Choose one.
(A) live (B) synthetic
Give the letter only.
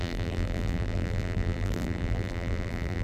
B